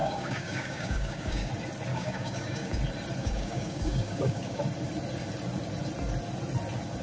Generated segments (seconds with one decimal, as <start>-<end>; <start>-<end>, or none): 0.0-1.5; 1.9-2.8; 3.2-4.6